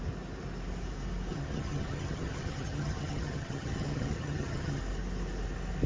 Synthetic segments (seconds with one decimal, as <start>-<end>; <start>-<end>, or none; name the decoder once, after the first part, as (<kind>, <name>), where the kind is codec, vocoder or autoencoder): 1.3-4.8 (vocoder, HiFi-GAN)